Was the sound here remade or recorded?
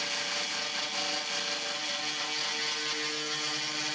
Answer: recorded